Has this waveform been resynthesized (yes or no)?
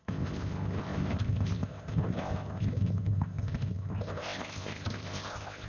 yes